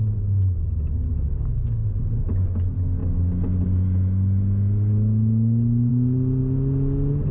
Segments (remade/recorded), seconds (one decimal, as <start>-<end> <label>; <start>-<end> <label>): 0.0-7.3 recorded